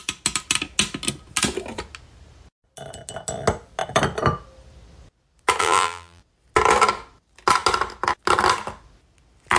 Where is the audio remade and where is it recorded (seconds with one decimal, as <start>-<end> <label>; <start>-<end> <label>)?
0.0-5.6 recorded; 5.6-6.2 remade; 6.2-9.6 recorded